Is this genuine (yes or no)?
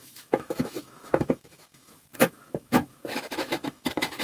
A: no